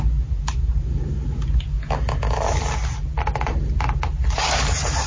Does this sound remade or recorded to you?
recorded